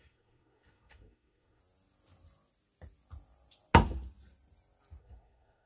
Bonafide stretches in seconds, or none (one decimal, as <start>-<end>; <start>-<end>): 1.6-5.0